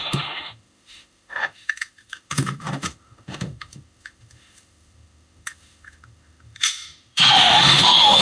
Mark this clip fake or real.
fake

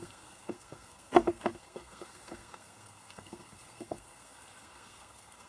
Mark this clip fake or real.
fake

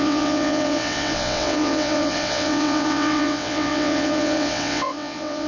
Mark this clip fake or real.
fake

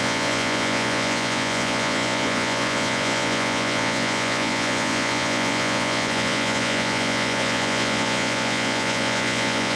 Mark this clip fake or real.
fake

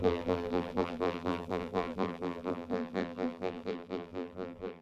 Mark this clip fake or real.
fake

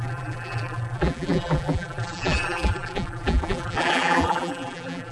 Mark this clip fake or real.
fake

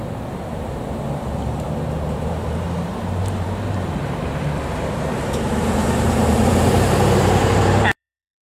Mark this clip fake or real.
fake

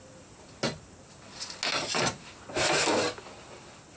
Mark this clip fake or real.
real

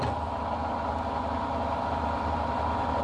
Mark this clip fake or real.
real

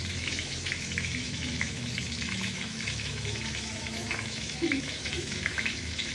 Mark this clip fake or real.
fake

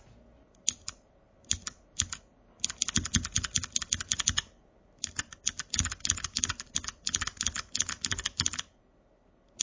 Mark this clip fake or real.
real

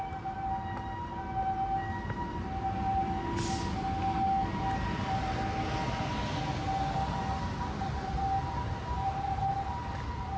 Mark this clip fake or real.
real